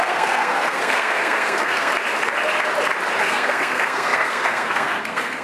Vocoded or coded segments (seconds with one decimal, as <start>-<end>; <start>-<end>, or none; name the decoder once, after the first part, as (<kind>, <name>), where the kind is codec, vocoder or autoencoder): 0.0-1.9 (codec, SNAC); 3.2-5.4